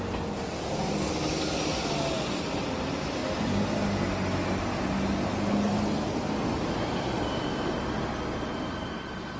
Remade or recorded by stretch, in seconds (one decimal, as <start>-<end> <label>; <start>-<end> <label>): 0.0-9.4 recorded